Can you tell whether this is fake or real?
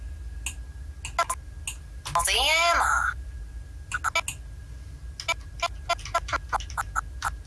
real